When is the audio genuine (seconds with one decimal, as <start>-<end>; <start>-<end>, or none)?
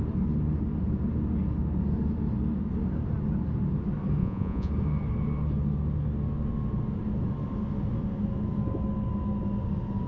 0.0-4.2; 4.7-10.1